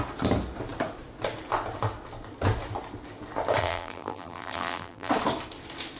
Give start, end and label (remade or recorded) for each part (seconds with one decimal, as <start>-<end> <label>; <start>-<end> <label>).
0.0-3.6 recorded; 3.6-5.1 remade; 5.1-6.0 recorded